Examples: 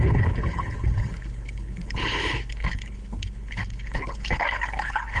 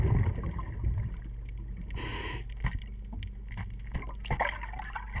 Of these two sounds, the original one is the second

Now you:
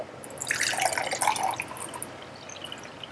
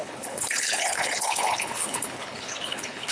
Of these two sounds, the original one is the first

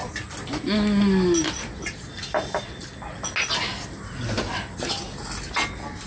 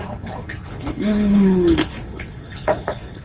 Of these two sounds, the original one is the first